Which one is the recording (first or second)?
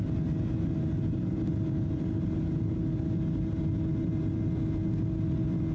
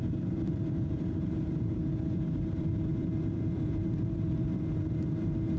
first